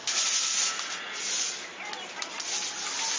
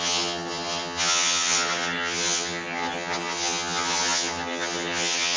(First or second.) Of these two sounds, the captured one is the first